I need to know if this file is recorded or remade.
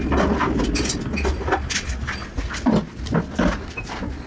recorded